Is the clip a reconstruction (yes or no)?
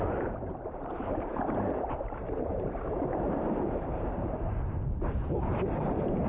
yes